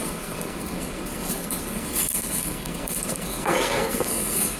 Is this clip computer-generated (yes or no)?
yes